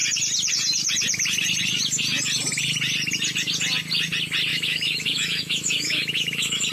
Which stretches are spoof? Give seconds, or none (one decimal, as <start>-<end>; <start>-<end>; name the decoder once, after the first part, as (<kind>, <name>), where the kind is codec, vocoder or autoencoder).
4.5-6.7 (autoencoder, DAC-VAE)